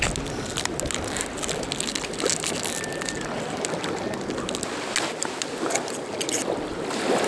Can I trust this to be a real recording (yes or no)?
yes